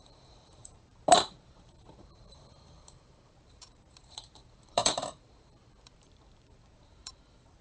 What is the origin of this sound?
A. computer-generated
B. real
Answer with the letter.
A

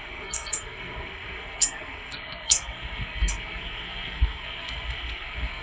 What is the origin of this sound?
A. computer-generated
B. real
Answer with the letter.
A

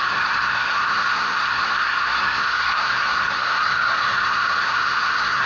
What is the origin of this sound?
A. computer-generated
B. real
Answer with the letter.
A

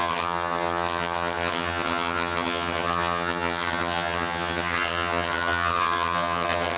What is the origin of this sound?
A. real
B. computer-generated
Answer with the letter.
B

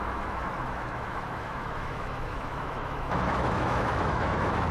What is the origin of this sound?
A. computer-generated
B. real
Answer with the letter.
A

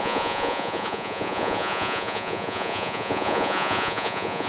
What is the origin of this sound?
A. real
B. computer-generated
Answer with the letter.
B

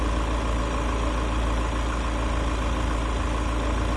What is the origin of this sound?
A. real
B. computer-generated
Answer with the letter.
A